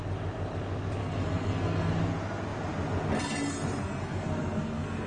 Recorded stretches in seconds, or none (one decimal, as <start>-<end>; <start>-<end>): 0.0-1.0; 1.9-3.8